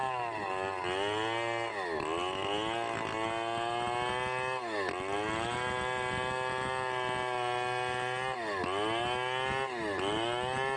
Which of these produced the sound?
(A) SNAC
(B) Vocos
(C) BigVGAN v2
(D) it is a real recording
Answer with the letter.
D